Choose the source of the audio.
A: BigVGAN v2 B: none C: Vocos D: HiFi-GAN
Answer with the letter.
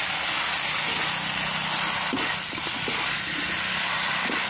B